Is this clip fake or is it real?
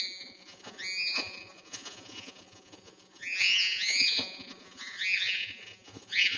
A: fake